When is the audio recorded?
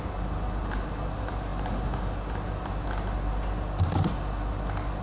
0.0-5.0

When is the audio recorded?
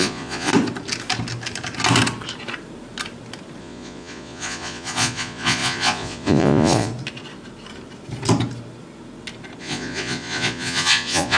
0.5-3.6; 6.9-9.6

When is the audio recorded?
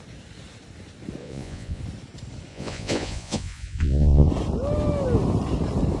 0.0-1.2; 1.8-2.5; 4.3-6.0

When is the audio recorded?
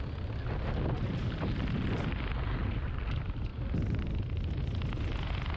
0.0-5.6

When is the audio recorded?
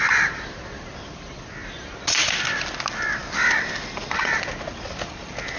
0.0-3.2; 3.8-5.6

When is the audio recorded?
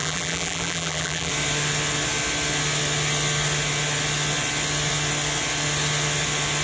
1.3-6.6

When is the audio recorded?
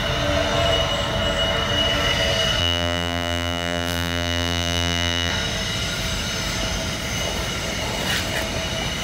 0.0-2.6; 5.3-9.0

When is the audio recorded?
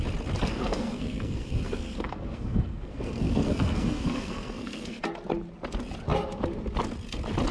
0.0-0.5; 5.0-7.5